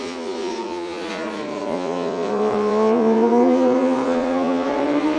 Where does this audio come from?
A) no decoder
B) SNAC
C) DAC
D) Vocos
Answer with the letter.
D